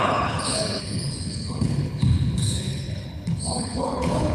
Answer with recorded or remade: remade